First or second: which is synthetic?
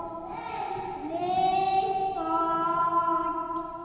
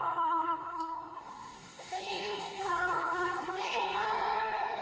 second